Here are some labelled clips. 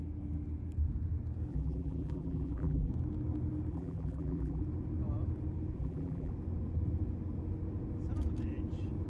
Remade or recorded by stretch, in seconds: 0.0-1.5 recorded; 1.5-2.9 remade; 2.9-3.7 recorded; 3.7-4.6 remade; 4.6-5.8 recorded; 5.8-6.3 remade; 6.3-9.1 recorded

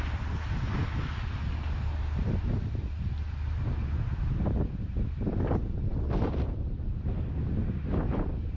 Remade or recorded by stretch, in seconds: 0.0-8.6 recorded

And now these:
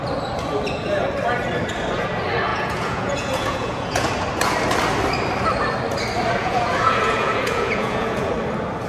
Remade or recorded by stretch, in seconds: 0.0-2.5 recorded; 2.5-4.1 remade; 4.1-6.4 recorded; 6.4-8.3 remade; 8.3-8.9 recorded